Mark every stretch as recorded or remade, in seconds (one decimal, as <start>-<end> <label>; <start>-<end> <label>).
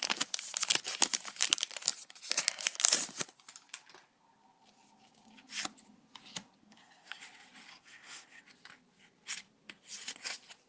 0.0-6.6 recorded; 6.6-7.2 remade; 7.2-7.7 recorded; 7.7-8.4 remade; 8.4-10.7 recorded